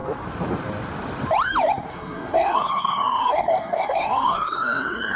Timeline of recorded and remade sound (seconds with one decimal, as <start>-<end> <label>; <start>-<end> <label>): 0.0-1.9 recorded; 1.9-5.2 remade